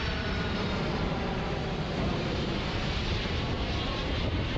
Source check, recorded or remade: remade